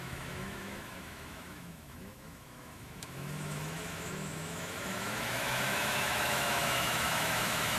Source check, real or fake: fake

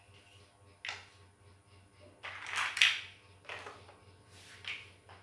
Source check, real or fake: real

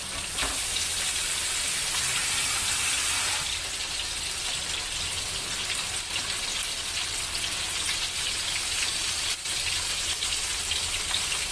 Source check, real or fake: real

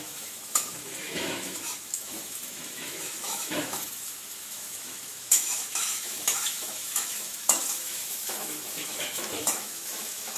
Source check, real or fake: fake